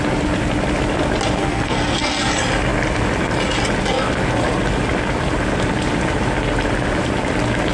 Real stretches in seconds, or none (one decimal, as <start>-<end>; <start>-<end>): 0.0-1.4; 2.3-7.7

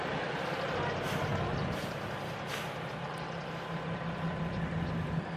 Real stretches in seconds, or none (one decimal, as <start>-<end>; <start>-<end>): 0.0-5.4

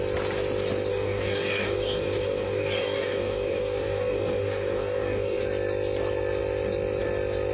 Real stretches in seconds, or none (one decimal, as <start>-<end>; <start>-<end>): 0.0-0.9; 5.4-7.5

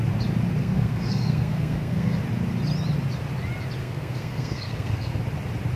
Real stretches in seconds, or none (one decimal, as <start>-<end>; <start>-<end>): 0.0-0.6; 2.2-3.8; 5.2-5.8

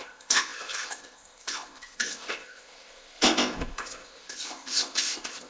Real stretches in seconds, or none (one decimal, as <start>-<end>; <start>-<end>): none